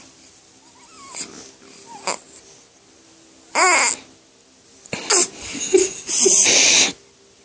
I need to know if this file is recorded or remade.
recorded